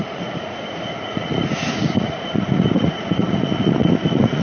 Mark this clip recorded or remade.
remade